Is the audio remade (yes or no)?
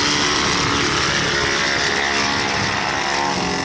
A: no